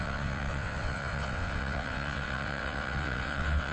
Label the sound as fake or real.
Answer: fake